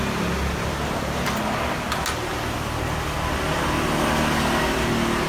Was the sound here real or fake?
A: real